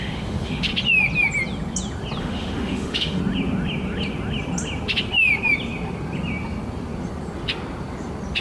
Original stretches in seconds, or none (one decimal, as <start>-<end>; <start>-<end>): 0.7-2.2; 3.2-8.4